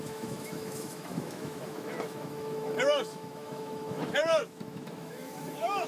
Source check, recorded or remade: remade